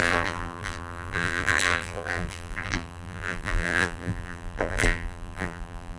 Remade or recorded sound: remade